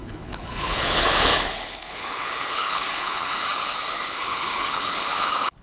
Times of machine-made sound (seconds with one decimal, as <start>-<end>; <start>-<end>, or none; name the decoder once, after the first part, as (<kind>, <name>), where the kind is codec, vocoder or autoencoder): 0.0-5.6 (codec, HILCodec)